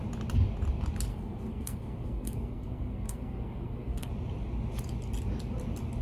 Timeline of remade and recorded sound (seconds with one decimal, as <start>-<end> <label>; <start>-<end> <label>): 0.0-1.1 recorded; 1.1-4.1 remade; 4.1-6.0 recorded